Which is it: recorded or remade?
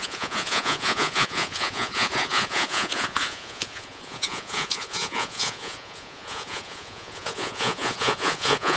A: remade